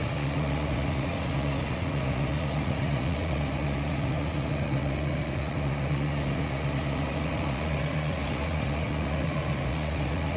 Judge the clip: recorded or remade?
remade